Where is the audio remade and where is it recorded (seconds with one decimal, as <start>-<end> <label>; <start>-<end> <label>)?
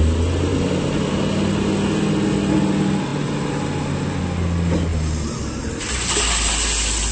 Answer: 0.0-4.9 recorded; 4.9-5.4 remade; 5.4-7.1 recorded